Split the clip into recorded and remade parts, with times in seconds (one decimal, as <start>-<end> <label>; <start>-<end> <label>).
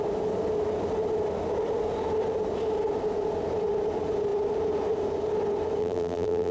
0.0-5.8 recorded; 5.8-6.5 remade